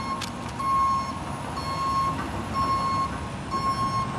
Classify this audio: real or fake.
real